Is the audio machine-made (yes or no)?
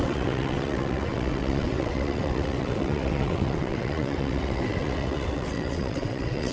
yes